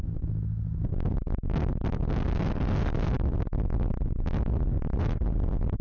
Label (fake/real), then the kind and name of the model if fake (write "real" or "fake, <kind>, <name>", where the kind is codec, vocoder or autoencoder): real